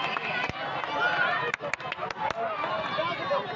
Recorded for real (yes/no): yes